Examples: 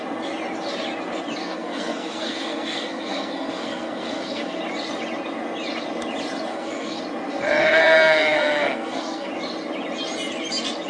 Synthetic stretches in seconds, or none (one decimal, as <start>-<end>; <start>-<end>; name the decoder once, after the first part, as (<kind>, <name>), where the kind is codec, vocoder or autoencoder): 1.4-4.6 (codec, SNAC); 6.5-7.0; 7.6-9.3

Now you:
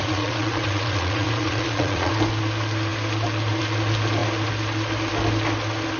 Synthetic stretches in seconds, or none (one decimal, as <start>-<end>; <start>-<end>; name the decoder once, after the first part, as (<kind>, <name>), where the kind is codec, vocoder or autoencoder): 0.0-2.1 (vocoder, Vocos)

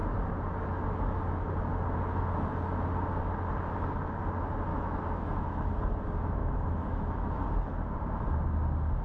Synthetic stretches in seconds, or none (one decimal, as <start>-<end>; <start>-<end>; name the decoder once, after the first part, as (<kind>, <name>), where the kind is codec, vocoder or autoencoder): 4.7-5.7 (autoencoder, DAC-VAE); 6.4-7.4

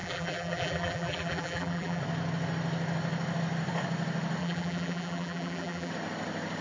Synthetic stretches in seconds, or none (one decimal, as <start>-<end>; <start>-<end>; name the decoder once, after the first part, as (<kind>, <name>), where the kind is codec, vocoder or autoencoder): 0.0-2.0 (vocoder, BigVGAN v2); 4.4-5.9

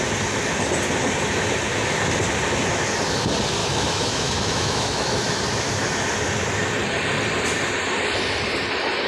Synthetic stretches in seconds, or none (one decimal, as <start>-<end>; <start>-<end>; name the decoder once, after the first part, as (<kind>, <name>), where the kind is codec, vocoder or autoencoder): 3.6-5.4 (autoencoder, DAC-VAE)